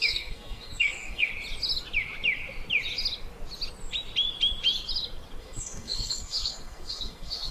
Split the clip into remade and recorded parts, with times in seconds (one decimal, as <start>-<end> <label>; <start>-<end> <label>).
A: 0.0-1.3 remade; 1.3-5.4 recorded; 5.4-7.5 remade